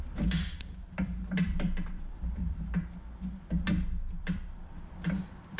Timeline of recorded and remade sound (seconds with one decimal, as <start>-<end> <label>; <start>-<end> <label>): 0.0-2.4 remade; 2.4-4.1 recorded; 4.1-5.6 remade